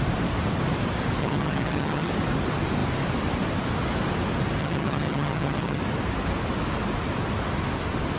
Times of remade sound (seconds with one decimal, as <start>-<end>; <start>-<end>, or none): 1.2-2.1; 4.6-5.8